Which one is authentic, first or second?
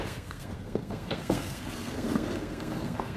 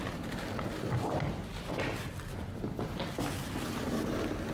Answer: second